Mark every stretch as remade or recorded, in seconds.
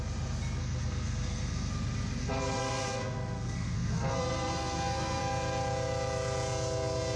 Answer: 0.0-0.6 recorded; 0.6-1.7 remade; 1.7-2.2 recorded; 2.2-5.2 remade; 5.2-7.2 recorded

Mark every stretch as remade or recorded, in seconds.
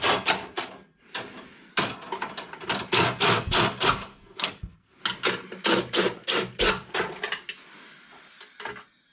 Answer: 0.0-4.1 recorded; 4.1-5.0 remade; 5.0-9.1 recorded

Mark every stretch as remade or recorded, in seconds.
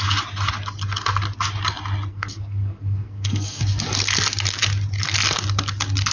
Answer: 0.0-2.1 recorded; 2.1-3.6 remade; 3.6-6.1 recorded